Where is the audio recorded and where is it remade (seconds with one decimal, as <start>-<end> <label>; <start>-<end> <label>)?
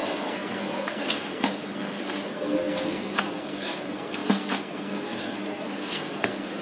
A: 0.0-6.6 remade